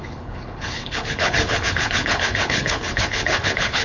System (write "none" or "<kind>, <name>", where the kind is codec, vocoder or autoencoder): codec, HILCodec